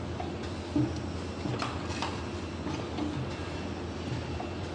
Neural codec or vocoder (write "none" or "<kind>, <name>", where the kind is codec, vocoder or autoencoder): none